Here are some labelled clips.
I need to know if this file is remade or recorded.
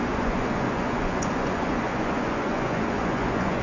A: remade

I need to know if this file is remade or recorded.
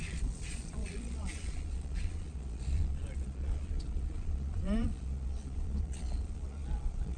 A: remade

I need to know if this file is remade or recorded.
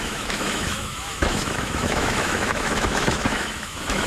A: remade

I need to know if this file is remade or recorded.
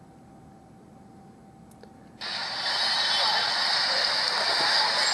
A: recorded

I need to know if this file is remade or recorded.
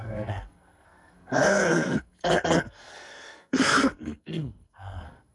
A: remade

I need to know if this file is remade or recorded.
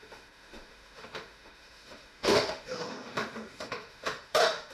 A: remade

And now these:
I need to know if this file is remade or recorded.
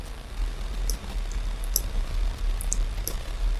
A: recorded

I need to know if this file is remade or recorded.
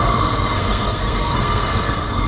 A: remade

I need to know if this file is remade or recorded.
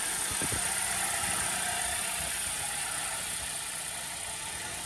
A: recorded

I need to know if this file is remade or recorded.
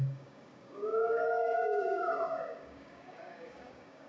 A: remade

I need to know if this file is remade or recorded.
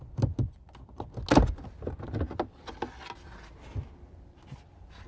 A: recorded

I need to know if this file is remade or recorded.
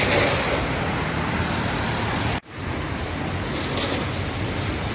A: recorded